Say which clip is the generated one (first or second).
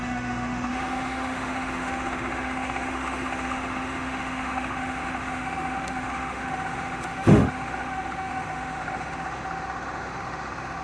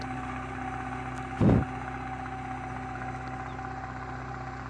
first